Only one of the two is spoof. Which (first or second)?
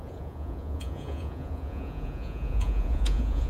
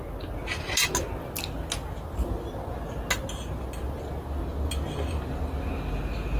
first